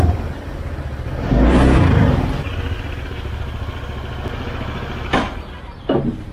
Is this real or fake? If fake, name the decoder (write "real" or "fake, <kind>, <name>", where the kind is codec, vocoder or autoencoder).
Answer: real